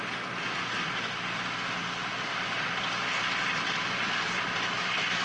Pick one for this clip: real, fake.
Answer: real